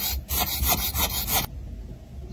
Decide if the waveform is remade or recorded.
recorded